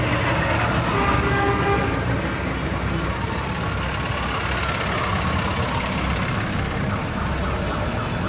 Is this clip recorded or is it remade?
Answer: recorded